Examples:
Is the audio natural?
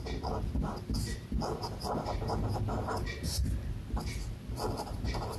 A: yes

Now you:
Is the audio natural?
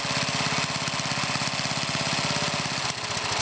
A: yes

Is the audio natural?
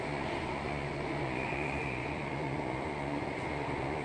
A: no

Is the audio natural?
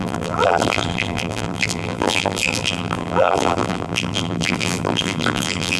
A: no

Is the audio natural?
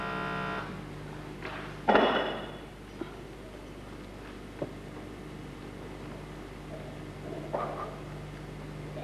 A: yes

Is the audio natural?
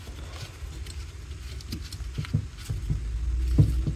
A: yes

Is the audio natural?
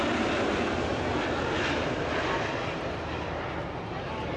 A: yes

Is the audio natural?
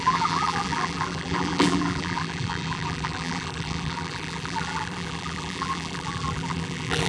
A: no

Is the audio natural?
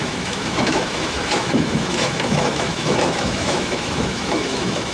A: no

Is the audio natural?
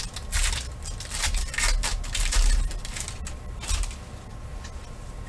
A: yes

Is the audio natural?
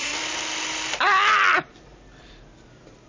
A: no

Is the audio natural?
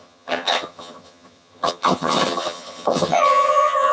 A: no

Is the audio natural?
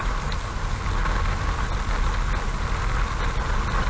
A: yes